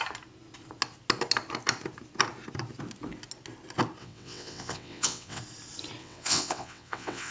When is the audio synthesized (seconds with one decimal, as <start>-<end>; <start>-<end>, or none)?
4.0-5.4; 6.0-7.3